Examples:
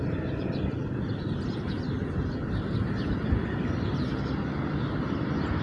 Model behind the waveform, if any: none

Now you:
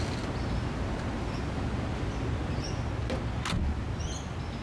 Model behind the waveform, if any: none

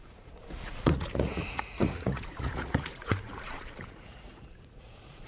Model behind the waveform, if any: vocoder, Vocos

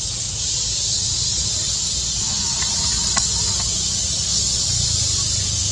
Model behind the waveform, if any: none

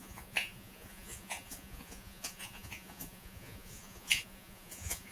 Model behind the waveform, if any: vocoder, Vocos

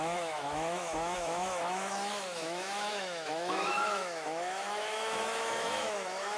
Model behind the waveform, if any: autoencoder, DAC-VAE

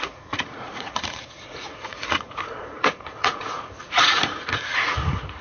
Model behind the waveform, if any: vocoder, Vocos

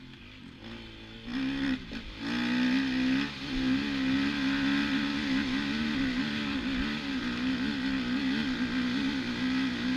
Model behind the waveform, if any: none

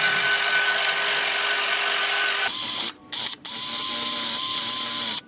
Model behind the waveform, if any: none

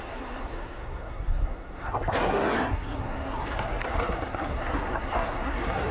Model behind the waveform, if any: codec, SNAC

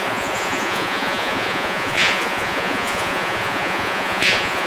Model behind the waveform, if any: vocoder, Vocos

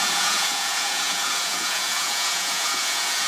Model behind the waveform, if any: vocoder, Vocos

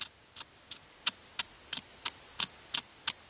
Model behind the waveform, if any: none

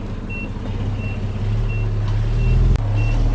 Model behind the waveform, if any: none